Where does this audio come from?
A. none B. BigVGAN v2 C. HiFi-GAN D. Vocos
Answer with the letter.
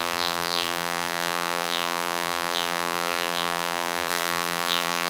B